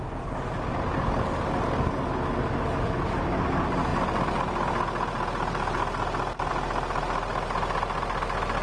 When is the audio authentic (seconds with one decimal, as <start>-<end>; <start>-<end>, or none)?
0.0-8.6